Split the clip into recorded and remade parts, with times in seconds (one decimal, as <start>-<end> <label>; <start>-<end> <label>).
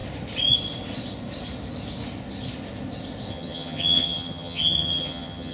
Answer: 0.0-3.3 recorded; 3.3-5.5 remade